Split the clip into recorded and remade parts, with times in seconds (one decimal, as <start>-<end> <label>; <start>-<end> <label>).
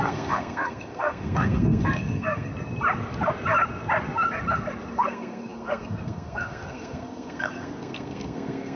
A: 0.0-2.5 remade; 2.5-4.9 recorded; 4.9-8.8 remade